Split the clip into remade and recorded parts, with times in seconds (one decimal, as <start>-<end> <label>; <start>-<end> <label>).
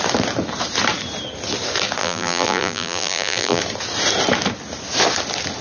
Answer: 0.0-2.0 recorded; 2.0-3.6 remade; 3.6-5.6 recorded